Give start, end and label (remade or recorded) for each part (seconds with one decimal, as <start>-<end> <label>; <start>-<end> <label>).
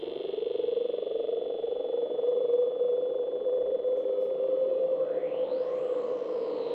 0.0-4.0 remade; 4.0-6.7 recorded